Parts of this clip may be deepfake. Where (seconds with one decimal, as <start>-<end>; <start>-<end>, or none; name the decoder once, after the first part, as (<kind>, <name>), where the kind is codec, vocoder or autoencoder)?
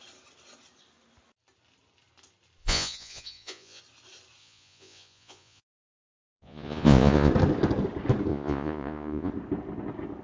2.6-3.8 (vocoder, Vocos); 4.4-7.3; 8.3-9.3